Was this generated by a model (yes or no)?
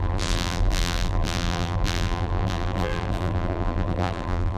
yes